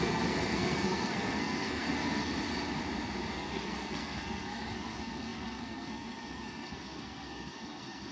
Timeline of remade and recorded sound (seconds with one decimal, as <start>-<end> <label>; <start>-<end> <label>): 0.0-2.3 remade; 2.3-3.3 recorded; 3.3-8.1 remade